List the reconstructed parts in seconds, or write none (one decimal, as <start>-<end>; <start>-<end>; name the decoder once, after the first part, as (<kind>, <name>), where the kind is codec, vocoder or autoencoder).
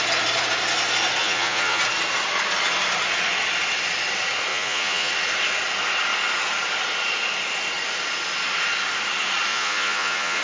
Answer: 1.2-1.8 (vocoder, Vocos); 4.5-5.1; 9.5-10.4